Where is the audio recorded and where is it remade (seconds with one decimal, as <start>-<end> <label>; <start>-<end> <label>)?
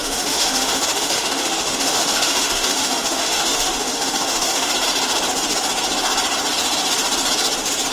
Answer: 0.0-4.7 remade; 4.7-7.9 recorded